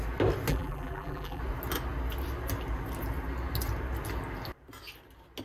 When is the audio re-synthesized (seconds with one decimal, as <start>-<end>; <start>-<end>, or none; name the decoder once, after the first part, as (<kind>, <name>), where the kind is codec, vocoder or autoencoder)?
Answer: 0.5-1.4 (vocoder, BigVGAN v2)